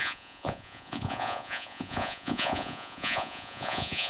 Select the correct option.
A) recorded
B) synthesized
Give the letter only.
B